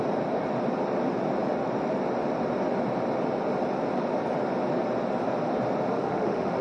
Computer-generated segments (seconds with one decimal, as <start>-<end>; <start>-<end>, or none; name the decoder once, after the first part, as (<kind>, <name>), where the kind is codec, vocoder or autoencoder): 5.9-6.6 (autoencoder, DAC-VAE)